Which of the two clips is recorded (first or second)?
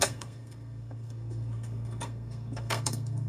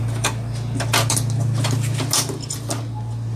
second